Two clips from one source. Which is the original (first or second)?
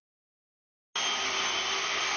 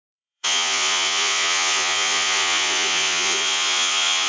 first